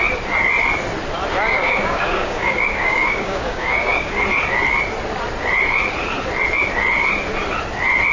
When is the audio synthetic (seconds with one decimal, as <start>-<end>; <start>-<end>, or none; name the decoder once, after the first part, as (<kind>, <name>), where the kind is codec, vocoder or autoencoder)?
1.5-4.2 (codec, DAC)